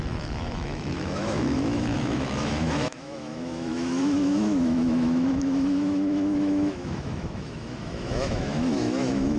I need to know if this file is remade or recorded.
remade